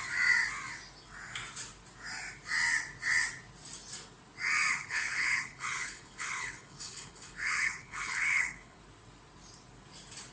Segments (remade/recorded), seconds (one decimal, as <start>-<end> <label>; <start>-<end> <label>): 0.0-4.8 recorded; 4.8-8.8 remade; 8.8-10.3 recorded